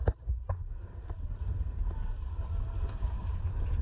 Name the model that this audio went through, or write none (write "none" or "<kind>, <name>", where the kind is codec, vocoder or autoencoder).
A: none